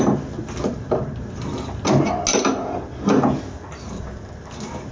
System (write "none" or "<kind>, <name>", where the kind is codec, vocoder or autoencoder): none